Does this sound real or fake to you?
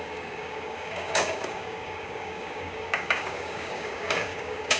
fake